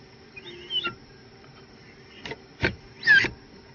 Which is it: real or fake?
real